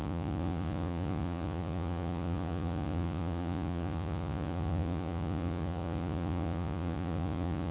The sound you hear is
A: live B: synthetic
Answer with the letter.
B